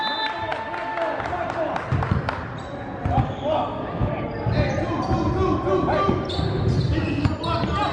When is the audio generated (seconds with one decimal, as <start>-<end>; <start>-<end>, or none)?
none